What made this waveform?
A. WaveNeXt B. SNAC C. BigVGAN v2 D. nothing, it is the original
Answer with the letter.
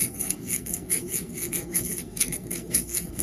B